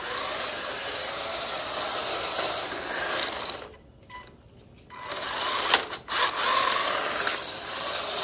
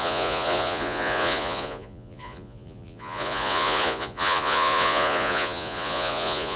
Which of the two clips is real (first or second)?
first